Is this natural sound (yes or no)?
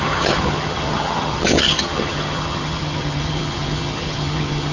no